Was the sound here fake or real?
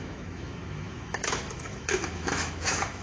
fake